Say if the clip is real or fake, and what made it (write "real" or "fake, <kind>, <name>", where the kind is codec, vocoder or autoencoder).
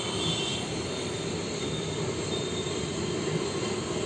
real